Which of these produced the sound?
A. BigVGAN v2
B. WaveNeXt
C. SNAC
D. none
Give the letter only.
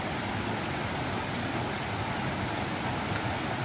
D